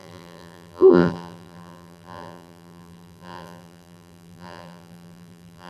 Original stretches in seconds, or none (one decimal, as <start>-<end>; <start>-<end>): none